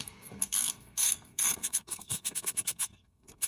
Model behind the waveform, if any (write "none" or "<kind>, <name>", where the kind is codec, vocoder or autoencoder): codec, SNAC